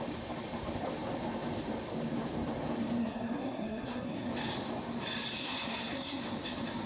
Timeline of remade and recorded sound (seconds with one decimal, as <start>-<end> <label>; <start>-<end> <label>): 0.0-3.0 recorded; 3.0-4.3 remade; 4.3-5.4 recorded; 5.4-6.2 remade; 6.2-6.9 recorded